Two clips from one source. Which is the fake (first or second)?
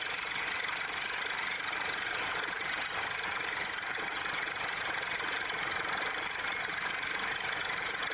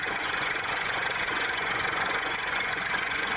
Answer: second